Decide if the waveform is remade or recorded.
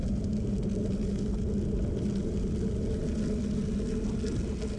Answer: recorded